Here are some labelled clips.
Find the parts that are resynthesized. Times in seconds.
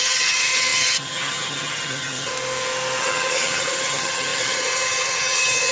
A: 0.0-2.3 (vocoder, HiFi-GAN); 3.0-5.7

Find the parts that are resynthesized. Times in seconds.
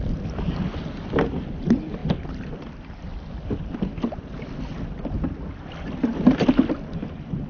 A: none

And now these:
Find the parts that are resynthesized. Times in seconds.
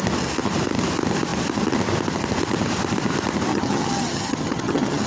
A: 3.5-5.1 (vocoder, HiFi-GAN)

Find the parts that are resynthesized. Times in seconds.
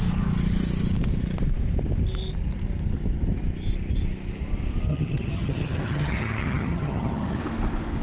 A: 4.9-7.4 (vocoder, HiFi-GAN)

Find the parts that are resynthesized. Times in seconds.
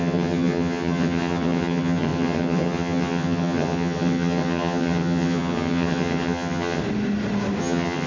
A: 0.0-6.8 (vocoder, HiFi-GAN); 7.6-8.1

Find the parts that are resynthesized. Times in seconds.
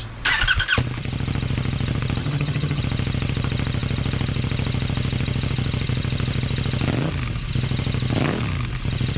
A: 2.2-2.8 (vocoder, HiFi-GAN)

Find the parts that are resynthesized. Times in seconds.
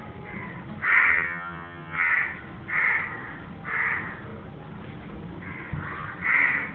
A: 1.1-2.1 (vocoder, HiFi-GAN)